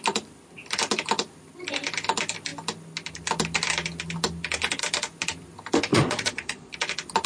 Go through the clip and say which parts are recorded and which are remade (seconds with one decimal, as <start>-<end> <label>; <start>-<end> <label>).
0.0-5.9 recorded; 5.9-6.7 remade; 6.7-7.3 recorded